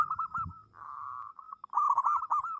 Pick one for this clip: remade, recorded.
recorded